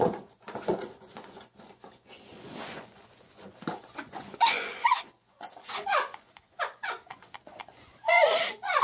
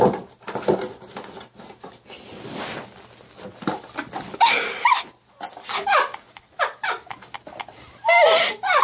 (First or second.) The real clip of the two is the second